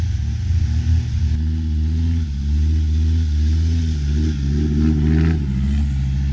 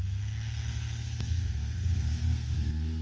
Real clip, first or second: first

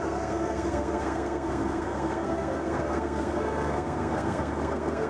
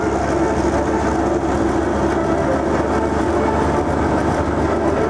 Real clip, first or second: second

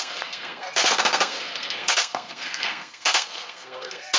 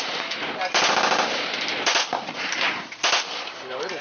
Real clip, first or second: second